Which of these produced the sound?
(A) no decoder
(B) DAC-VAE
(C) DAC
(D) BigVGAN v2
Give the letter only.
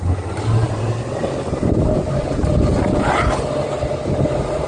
A